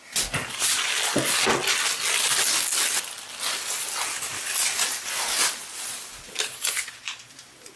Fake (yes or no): no